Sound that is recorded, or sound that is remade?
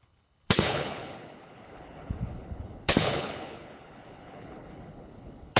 remade